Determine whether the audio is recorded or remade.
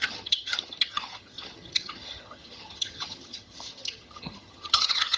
remade